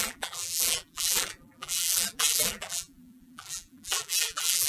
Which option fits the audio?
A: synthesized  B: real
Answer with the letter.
A